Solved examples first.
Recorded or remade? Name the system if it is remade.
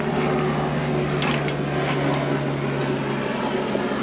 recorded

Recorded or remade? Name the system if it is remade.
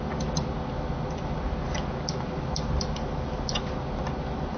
recorded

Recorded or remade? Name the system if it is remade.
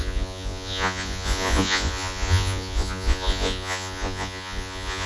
remade, vocoder, Vocos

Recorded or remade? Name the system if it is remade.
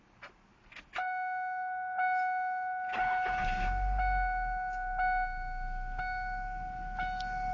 recorded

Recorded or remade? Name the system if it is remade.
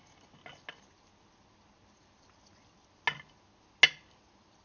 recorded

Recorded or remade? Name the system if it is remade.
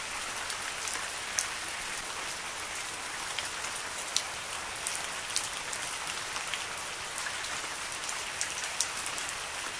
recorded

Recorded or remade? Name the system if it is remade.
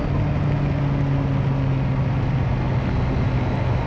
recorded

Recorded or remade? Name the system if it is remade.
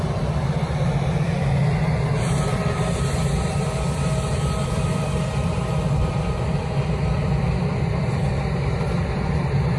remade, vocoder, BigVGAN v2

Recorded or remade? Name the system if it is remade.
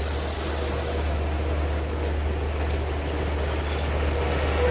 recorded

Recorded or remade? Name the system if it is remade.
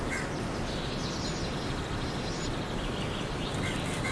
recorded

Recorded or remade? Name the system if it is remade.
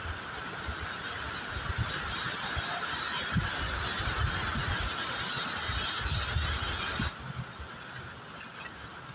recorded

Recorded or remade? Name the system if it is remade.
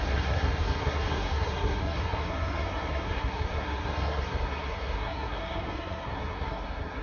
remade, codec, SNAC